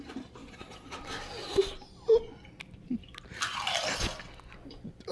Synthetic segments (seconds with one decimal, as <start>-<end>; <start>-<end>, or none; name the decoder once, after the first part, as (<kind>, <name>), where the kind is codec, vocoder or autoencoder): 0.4-1.0 (vocoder, Vocos)

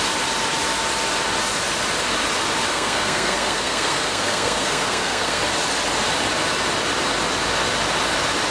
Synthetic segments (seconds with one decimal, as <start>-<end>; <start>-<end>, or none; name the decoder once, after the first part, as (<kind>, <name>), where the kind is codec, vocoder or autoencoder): 2.7-5.4 (codec, SNAC)

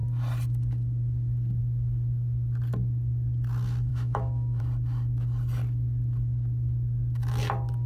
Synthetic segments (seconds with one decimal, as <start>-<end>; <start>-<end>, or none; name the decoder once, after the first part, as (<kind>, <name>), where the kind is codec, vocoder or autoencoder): 3.9-4.6 (autoencoder, DAC-VAE)

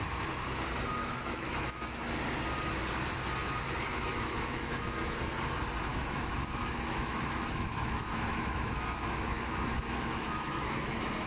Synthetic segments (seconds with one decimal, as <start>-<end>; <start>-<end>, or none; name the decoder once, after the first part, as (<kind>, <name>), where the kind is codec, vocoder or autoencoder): 1.0-2.1 (autoencoder, DAC-VAE); 3.4-5.2; 5.9-11.3

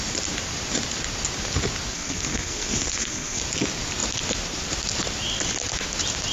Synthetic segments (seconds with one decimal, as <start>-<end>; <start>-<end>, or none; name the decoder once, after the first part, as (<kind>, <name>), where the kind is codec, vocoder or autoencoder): 1.9-3.4 (codec, SNAC)